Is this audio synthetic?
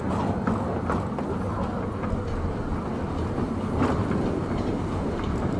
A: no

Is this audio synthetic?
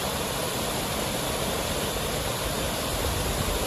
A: no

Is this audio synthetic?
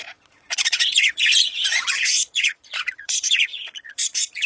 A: yes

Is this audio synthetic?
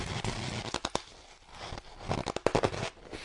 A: no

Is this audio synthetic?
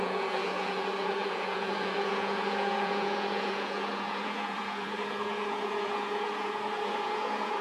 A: yes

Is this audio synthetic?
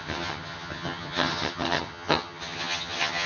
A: yes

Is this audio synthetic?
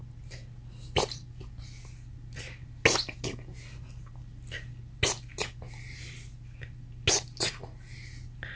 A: no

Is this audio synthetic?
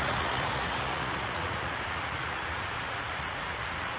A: yes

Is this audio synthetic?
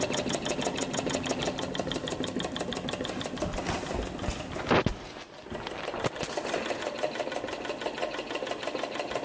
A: no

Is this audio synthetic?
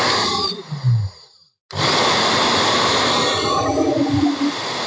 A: no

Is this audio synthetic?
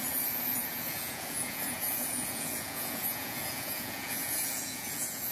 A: yes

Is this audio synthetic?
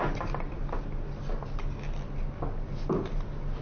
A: no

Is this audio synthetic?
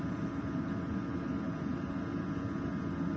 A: no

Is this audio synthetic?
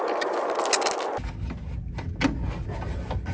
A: no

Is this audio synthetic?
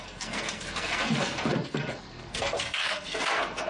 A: yes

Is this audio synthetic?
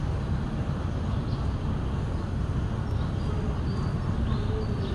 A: no